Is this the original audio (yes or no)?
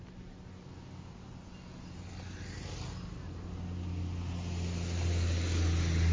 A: yes